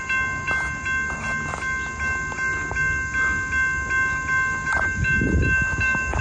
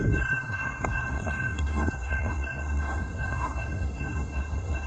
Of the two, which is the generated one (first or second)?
second